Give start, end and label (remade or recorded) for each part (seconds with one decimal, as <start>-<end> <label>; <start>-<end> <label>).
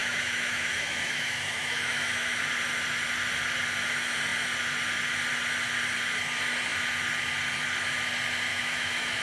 0.0-2.4 remade; 2.4-8.5 recorded; 8.5-9.2 remade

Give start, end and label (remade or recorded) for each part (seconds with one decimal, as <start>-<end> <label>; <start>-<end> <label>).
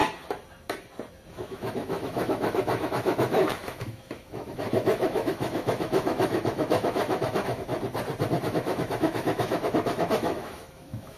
0.0-1.3 recorded; 1.3-7.7 remade; 7.7-8.4 recorded; 8.4-11.2 remade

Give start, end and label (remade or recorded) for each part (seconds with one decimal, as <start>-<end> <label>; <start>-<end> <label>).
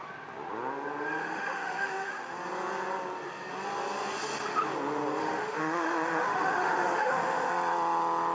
0.0-1.2 recorded; 1.2-2.1 remade; 2.1-5.2 recorded; 5.2-7.5 remade; 7.5-8.3 recorded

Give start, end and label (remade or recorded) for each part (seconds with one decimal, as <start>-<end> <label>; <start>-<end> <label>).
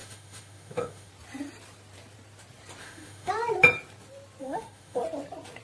0.0-1.1 remade; 1.1-2.8 recorded; 2.8-3.3 remade; 3.3-4.4 recorded; 4.4-5.0 remade; 5.0-5.6 recorded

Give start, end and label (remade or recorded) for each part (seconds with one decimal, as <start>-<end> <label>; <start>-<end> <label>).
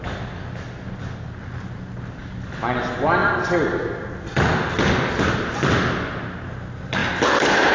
0.0-7.7 recorded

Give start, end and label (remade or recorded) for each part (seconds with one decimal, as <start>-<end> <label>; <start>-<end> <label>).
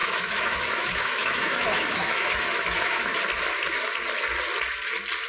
0.0-3.2 remade; 3.2-5.3 recorded